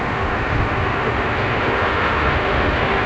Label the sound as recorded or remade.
remade